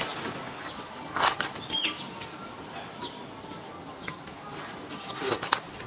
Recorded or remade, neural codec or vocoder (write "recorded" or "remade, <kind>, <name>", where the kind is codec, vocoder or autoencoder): recorded